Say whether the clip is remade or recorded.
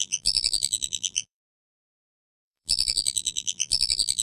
remade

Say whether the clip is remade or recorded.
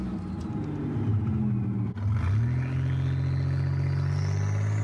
recorded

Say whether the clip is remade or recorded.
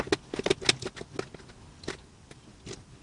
recorded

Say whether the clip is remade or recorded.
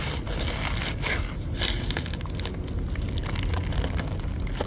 recorded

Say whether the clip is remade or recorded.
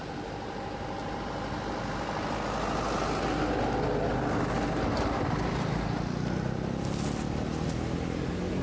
recorded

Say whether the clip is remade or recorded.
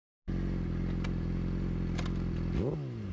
recorded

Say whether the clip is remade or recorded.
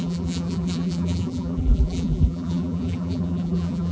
remade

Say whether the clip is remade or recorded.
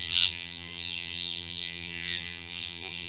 remade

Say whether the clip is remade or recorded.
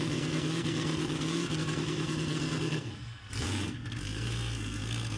remade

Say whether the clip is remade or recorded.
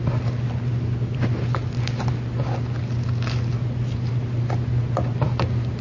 recorded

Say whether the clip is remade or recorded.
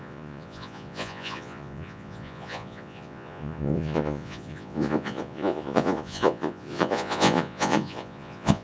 remade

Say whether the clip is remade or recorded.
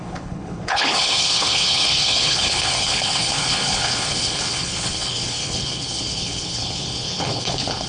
remade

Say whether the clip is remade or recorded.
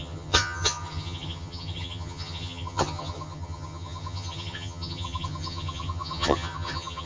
remade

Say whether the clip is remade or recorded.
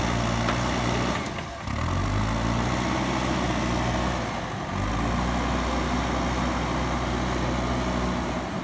recorded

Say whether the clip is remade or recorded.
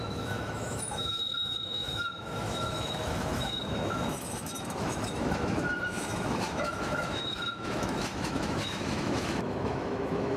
remade